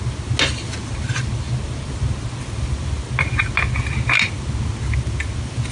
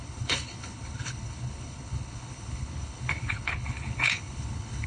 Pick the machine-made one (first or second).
second